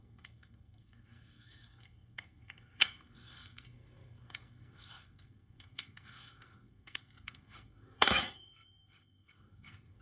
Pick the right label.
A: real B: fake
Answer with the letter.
B